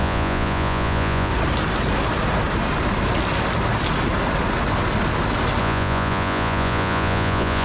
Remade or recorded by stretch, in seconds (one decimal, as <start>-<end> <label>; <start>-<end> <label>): 0.0-1.3 remade; 1.3-5.6 recorded; 5.6-7.6 remade